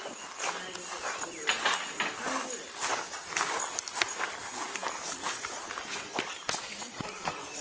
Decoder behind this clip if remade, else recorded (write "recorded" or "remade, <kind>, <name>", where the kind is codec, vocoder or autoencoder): recorded